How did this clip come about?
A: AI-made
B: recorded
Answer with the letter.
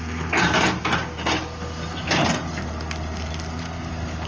B